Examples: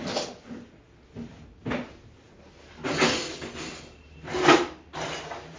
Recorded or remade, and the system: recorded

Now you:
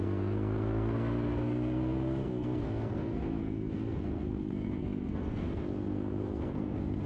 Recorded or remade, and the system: remade, codec, SNAC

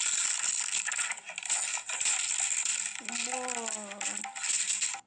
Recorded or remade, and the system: recorded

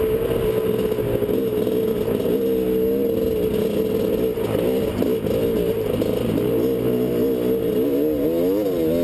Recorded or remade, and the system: recorded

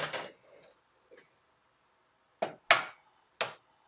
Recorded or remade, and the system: recorded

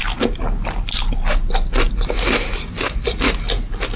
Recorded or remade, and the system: recorded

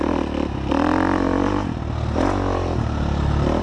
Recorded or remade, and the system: recorded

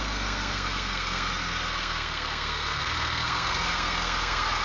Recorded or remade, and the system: remade, codec, SNAC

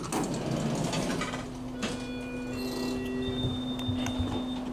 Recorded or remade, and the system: recorded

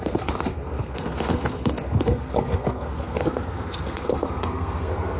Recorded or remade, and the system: remade, codec, SNAC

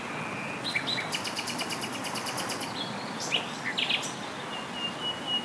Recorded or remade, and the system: recorded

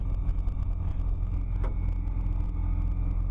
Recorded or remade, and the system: recorded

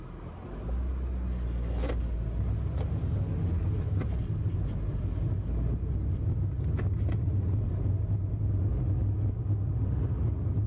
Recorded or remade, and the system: recorded